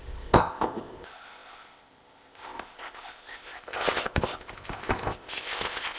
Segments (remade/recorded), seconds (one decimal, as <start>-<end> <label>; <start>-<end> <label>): 0.0-6.0 remade